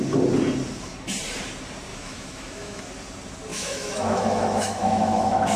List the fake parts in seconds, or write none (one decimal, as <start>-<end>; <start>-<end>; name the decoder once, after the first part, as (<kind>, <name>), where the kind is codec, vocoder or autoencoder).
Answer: 1.9-2.8 (autoencoder, DAC-VAE); 3.5-5.6